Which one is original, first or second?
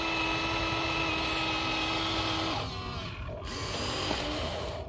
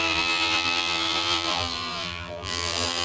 first